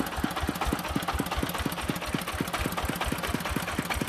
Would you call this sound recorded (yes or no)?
yes